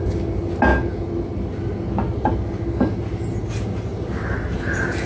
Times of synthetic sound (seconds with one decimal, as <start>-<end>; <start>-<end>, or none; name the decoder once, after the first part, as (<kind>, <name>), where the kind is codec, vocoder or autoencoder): none